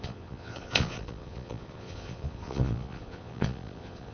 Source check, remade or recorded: remade